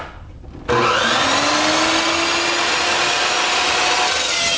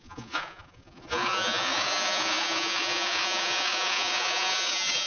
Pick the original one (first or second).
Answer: first